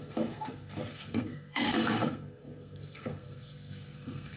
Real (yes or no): no